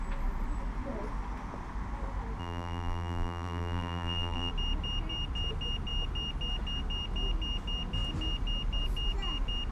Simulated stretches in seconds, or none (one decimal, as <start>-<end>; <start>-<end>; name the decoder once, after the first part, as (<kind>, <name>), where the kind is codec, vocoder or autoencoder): 2.4-4.5 (vocoder, BigVGAN v2)